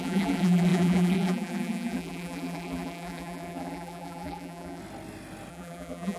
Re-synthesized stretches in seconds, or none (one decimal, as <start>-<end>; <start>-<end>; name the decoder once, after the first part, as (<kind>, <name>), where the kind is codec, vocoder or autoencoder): 0.0-4.8 (vocoder, BigVGAN v2); 5.5-6.2